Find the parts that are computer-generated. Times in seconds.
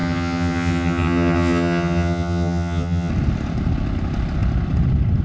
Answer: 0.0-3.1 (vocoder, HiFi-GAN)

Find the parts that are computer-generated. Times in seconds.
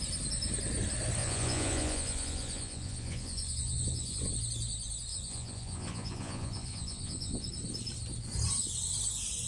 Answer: 1.2-4.3 (vocoder, Vocos); 5.1-7.5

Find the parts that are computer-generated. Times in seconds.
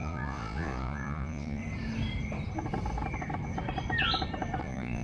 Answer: 0.0-1.6 (vocoder, Vocos); 4.6-5.0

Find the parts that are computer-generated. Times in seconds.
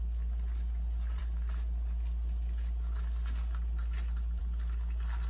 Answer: none